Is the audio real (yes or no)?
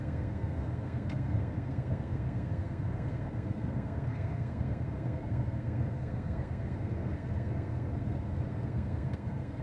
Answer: no